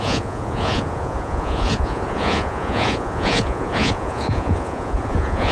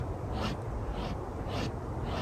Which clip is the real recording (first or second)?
second